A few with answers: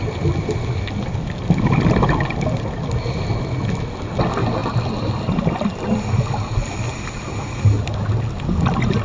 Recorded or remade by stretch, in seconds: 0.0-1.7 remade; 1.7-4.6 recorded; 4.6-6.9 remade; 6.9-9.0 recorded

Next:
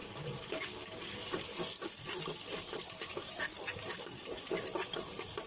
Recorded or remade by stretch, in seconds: 0.0-3.3 recorded; 3.3-3.7 remade; 3.7-4.3 recorded; 4.3-5.5 remade

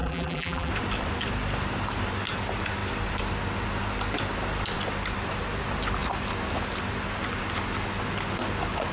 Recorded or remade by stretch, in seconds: 0.0-0.7 remade; 0.7-8.9 recorded

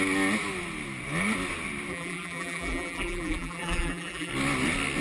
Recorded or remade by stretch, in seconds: 0.0-1.9 recorded; 1.9-4.3 remade; 4.3-5.0 recorded